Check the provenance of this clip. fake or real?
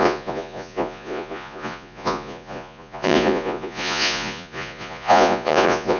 fake